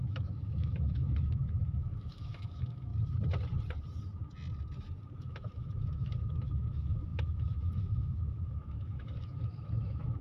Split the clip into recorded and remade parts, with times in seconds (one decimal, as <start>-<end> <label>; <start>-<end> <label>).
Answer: 0.0-2.9 remade; 2.9-5.2 recorded; 5.2-10.2 remade